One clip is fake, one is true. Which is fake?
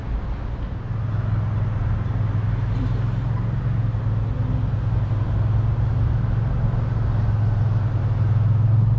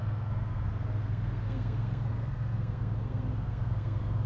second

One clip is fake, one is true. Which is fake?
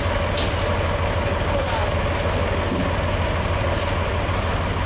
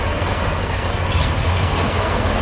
second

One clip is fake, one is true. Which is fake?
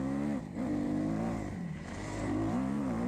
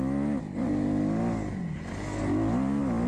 first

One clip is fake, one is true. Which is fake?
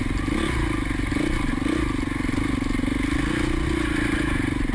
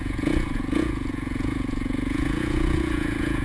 second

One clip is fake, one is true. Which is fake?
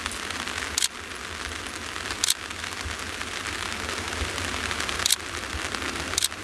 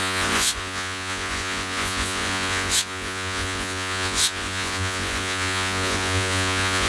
second